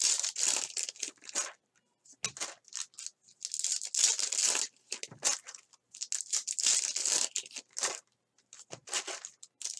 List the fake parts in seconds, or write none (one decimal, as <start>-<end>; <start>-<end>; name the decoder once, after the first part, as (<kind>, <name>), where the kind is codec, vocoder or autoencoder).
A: none